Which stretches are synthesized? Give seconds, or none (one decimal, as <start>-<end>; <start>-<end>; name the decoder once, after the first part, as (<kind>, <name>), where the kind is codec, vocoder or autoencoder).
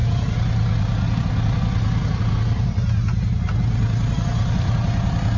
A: none